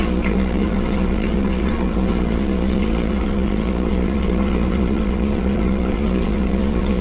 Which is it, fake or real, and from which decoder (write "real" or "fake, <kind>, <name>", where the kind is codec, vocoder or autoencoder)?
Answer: fake, vocoder, Vocos